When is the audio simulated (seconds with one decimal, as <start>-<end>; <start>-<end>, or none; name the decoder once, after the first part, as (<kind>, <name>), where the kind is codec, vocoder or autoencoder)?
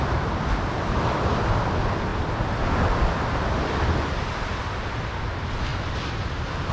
none